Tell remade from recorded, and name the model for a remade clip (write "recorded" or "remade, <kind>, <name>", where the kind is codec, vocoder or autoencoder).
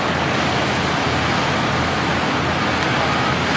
recorded